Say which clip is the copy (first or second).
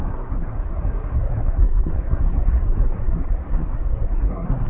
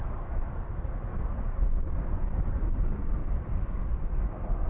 first